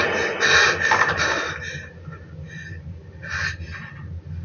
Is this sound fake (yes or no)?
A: no